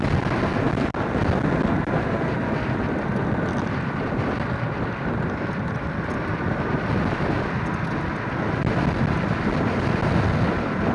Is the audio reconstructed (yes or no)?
no